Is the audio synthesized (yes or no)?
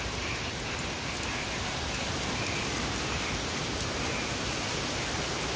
no